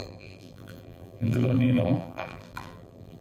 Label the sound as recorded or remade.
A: remade